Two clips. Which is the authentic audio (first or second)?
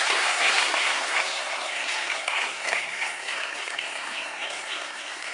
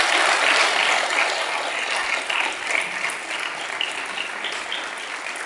second